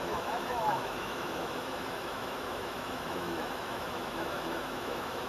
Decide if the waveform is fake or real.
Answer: fake